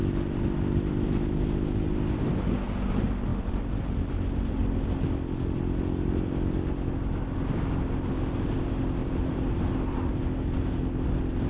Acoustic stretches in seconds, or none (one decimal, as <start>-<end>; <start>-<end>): 0.0-9.0; 10.0-11.5